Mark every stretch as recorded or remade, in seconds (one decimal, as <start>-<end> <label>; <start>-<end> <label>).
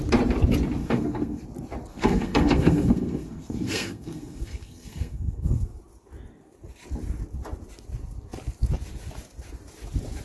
0.0-0.8 recorded; 0.8-1.4 remade; 1.4-1.9 recorded; 1.9-5.8 remade; 5.8-10.2 recorded